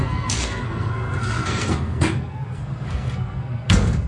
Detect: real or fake fake